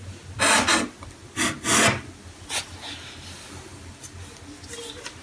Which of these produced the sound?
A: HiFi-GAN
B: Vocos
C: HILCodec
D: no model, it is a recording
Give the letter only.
D